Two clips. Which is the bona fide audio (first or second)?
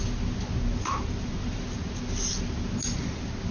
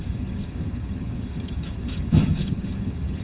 first